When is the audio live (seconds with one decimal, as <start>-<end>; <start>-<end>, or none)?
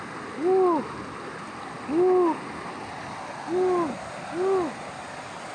0.0-5.5